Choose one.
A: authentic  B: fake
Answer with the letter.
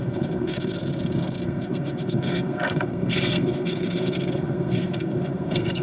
B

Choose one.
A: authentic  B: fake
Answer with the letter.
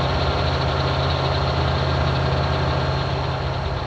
A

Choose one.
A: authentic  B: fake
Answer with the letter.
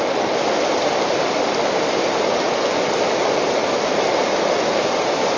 A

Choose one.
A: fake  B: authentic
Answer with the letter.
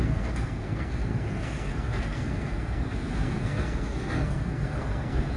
A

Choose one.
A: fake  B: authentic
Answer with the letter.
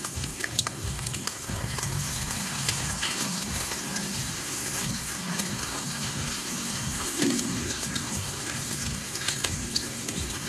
A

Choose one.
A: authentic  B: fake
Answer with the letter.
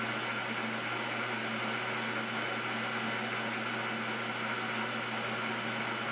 A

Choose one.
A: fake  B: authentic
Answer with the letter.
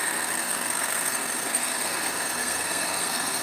A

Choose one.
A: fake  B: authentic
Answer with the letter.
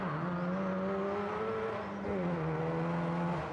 B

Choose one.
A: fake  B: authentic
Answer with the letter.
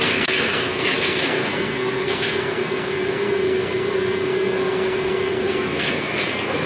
A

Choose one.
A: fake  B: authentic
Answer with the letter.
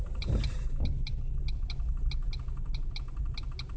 B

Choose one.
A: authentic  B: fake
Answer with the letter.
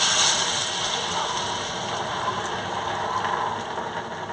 A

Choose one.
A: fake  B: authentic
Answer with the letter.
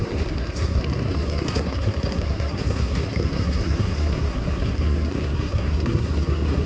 A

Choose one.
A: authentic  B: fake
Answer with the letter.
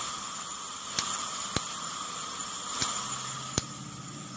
A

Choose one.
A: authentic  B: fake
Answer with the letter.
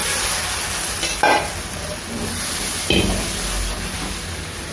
A